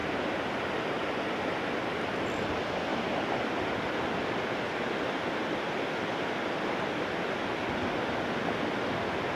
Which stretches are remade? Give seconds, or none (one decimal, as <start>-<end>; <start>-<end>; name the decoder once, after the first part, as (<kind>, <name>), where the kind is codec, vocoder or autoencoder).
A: none